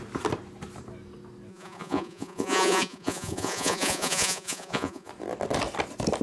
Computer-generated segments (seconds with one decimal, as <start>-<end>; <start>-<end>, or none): 1.5-5.1

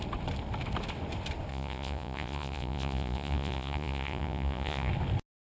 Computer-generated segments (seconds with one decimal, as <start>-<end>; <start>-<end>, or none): 1.5-4.9

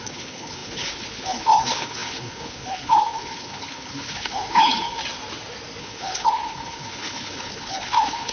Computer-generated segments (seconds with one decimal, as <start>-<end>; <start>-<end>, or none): 0.0-5.0; 5.8-8.3

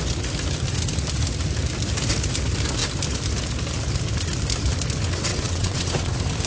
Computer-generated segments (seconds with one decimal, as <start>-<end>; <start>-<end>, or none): 5.3-6.1

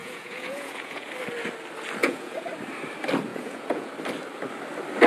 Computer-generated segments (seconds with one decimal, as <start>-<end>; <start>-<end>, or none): 0.0-1.1; 2.0-2.5; 3.3-3.9

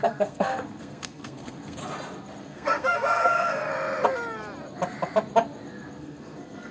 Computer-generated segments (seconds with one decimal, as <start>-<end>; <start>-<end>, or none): 0.0-1.8; 2.4-3.7; 6.0-6.7

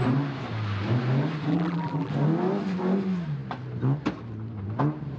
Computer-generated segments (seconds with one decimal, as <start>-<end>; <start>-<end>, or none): 1.5-2.1